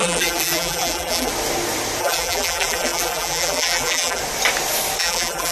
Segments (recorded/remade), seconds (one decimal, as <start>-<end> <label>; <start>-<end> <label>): 0.0-1.3 remade; 1.3-2.0 recorded; 2.0-4.2 remade; 4.2-5.0 recorded; 5.0-5.5 remade